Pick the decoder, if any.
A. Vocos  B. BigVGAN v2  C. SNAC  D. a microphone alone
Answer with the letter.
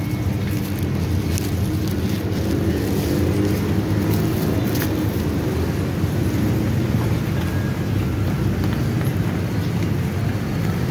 D